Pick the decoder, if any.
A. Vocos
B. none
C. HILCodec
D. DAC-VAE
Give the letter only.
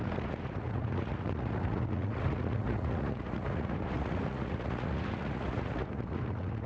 A